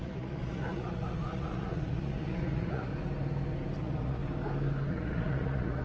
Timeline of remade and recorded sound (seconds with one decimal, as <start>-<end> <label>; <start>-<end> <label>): 0.0-2.9 remade; 2.9-3.8 recorded; 3.8-4.2 remade; 4.2-4.9 recorded; 4.9-5.8 remade